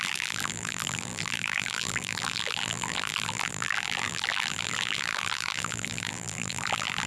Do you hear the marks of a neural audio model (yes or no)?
yes